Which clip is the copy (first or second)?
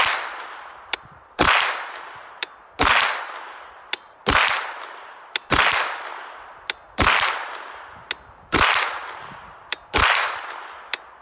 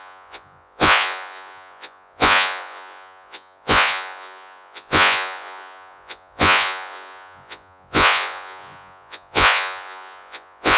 second